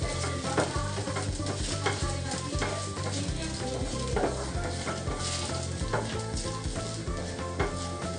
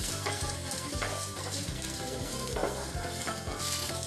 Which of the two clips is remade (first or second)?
second